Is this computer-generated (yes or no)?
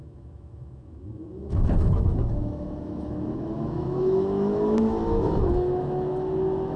yes